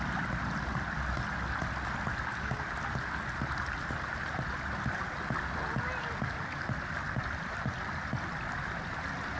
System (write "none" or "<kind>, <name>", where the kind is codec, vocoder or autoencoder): none